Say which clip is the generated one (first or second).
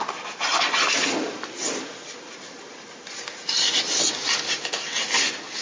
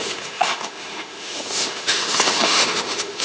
second